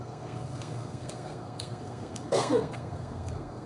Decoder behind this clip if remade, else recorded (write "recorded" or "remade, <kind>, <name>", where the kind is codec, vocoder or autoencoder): remade, codec, SNAC